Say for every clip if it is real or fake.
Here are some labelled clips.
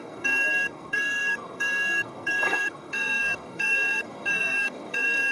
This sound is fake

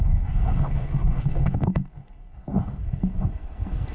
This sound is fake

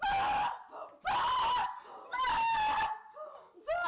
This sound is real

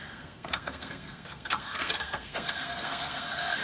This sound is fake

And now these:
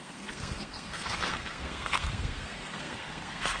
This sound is fake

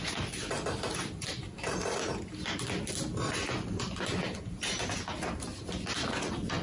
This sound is real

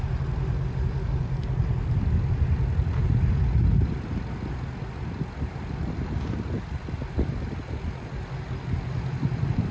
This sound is real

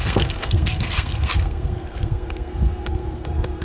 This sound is fake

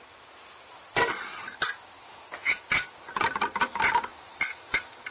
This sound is real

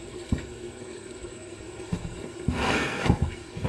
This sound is fake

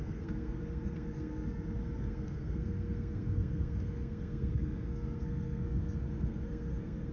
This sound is fake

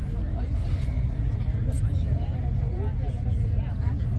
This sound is real